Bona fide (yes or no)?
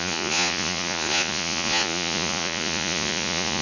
no